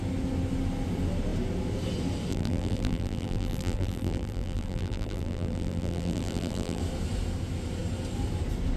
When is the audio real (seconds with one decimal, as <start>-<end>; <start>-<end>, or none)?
0.0-2.3; 6.8-8.8